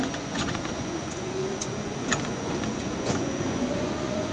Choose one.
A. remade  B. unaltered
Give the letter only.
A